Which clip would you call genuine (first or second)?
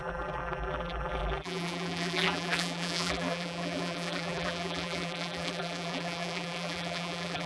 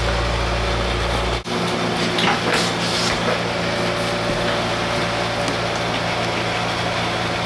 second